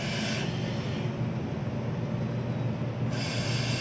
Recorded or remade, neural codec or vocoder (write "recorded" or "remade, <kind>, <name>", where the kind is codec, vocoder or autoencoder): recorded